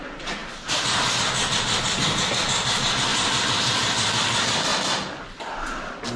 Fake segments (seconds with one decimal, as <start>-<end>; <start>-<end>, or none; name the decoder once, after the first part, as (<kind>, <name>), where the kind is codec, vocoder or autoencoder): 3.1-3.7 (vocoder, BigVGAN v2)

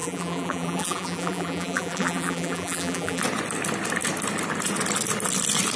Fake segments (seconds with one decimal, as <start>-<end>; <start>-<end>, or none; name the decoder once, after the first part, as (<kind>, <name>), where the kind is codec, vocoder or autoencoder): 0.0-3.2 (vocoder, BigVGAN v2)

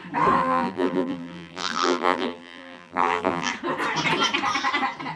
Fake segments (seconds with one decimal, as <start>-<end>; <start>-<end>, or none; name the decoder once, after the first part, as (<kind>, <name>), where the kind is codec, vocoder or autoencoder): 0.4-3.5 (vocoder, BigVGAN v2)